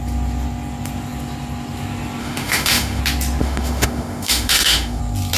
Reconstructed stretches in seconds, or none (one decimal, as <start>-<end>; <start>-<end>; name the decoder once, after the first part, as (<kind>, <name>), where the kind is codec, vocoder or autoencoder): 2.2-3.0 (autoencoder, DAC-VAE); 3.4-5.0